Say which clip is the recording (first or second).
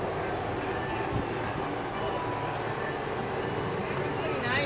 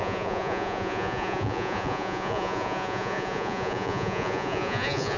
first